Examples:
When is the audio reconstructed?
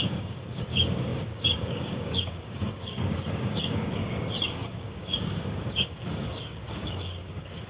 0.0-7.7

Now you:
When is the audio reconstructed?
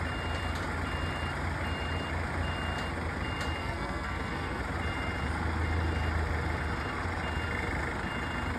3.6-4.6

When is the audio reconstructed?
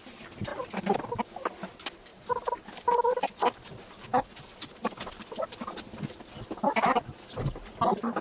2.1-2.7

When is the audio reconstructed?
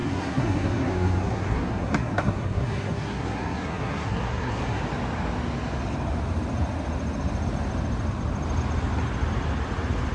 0.0-4.8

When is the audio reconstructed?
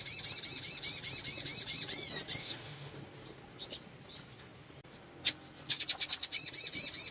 2.4-2.9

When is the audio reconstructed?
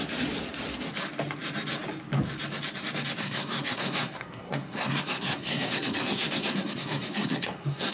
3.2-7.9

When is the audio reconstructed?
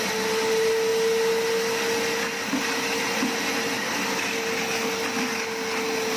none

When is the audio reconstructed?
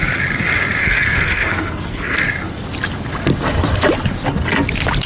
0.8-2.2